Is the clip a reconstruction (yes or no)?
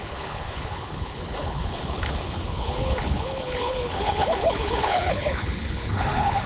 yes